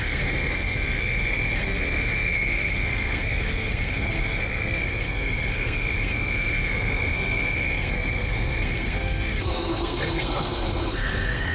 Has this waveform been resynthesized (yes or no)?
yes